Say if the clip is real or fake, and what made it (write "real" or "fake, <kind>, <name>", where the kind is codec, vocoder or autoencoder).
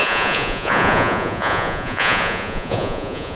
fake, vocoder, Vocos